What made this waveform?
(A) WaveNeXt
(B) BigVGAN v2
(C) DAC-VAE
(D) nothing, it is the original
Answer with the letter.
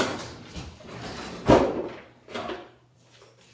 B